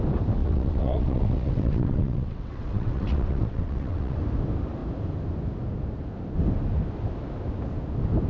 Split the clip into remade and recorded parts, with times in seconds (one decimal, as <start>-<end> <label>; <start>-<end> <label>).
0.0-0.4 recorded; 0.4-4.2 remade; 4.2-8.3 recorded